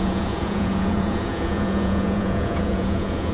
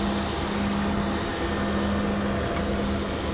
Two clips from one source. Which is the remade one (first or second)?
first